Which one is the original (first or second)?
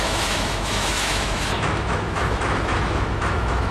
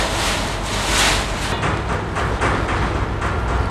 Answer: second